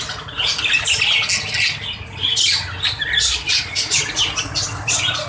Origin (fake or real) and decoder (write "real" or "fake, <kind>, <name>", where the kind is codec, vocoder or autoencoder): real